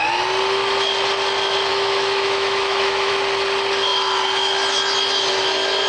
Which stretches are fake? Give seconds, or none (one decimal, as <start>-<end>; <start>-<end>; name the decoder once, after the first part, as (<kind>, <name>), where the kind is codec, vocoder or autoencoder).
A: 1.7-3.1 (autoencoder, DAC-VAE)